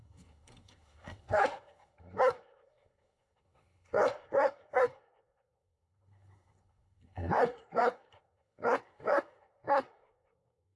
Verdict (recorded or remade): remade